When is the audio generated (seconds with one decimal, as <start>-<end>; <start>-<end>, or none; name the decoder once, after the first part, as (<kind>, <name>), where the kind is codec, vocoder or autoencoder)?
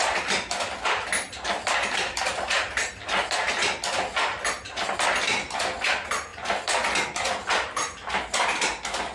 none